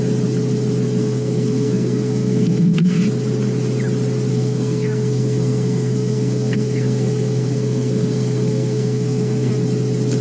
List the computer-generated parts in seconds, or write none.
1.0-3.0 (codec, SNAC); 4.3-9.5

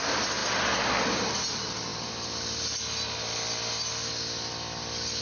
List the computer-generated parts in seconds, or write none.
none

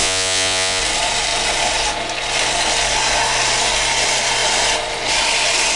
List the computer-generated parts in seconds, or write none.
0.0-0.8 (vocoder, Vocos)